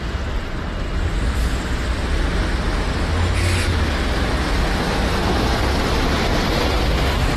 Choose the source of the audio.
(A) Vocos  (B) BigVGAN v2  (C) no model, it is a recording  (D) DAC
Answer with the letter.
C